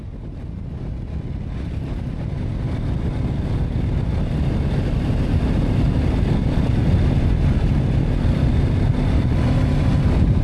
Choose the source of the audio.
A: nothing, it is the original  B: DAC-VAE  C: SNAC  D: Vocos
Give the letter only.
A